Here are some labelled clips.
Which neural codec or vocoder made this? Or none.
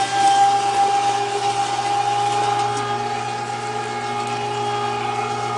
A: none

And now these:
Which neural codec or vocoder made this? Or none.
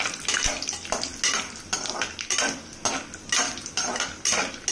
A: none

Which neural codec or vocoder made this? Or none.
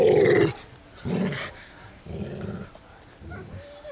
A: none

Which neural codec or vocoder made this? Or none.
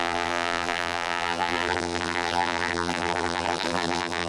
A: vocoder, BigVGAN v2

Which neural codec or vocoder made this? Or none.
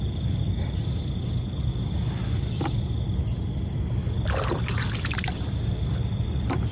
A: none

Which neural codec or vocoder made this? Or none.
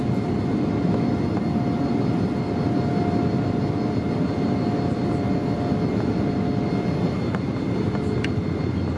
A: none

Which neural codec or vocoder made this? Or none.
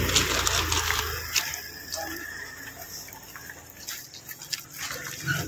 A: none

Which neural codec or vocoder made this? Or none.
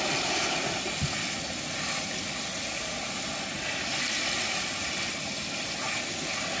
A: none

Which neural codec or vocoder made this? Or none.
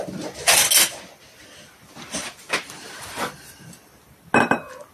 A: none